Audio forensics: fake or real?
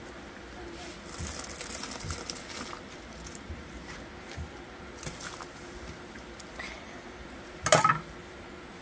real